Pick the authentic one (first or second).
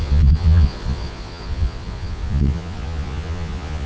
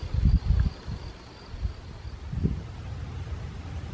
second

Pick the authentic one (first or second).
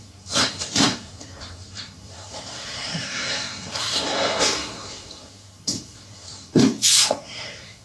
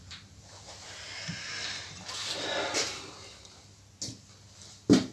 second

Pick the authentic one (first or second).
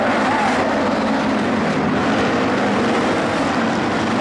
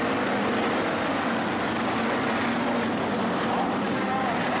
second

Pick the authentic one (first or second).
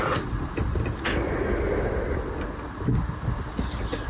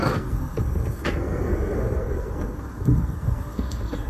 first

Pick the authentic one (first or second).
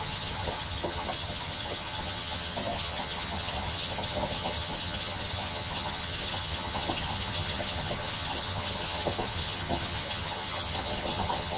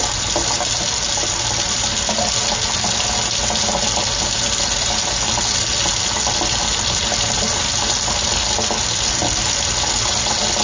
second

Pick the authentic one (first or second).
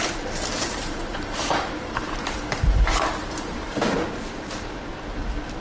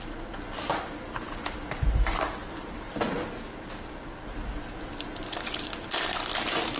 second